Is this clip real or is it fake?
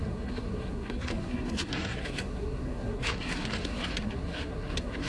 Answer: fake